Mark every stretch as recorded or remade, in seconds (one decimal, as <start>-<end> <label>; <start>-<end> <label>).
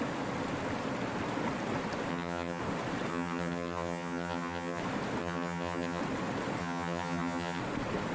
0.0-2.1 recorded; 2.1-2.6 remade; 2.6-3.1 recorded; 3.1-4.8 remade; 4.8-5.2 recorded; 5.2-6.0 remade; 6.0-6.6 recorded; 6.6-7.6 remade; 7.6-8.1 recorded